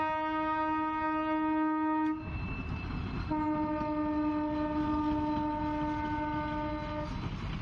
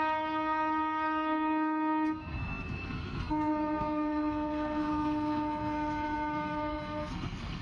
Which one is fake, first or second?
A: second